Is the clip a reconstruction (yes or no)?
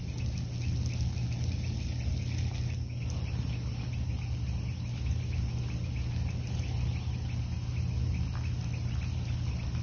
no